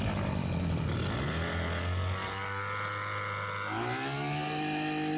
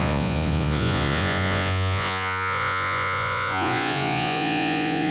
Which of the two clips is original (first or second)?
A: first